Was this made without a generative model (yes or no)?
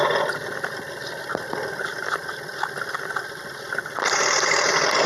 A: yes